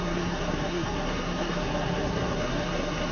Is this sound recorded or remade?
remade